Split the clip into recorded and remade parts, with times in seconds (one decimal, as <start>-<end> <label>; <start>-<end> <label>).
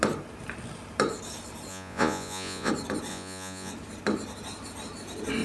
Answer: 0.0-1.7 recorded; 1.7-2.7 remade; 2.7-3.1 recorded; 3.1-3.7 remade; 3.7-5.4 recorded